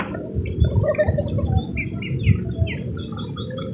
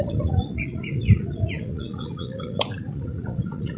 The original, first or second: first